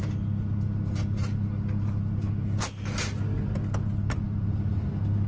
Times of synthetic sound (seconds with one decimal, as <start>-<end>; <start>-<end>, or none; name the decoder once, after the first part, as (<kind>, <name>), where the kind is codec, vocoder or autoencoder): none